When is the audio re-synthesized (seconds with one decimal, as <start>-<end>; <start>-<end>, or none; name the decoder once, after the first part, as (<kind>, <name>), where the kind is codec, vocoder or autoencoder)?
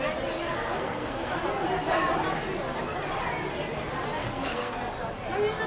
0.5-1.3 (codec, SNAC); 4.2-4.8